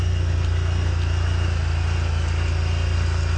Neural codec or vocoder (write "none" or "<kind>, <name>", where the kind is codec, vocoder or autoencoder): none